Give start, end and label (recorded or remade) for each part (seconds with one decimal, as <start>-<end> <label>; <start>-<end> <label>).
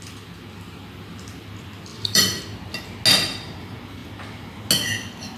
0.0-1.9 recorded; 1.9-2.4 remade; 2.4-5.4 recorded